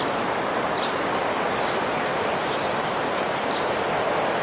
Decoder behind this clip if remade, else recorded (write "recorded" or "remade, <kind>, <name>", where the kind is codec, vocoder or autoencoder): recorded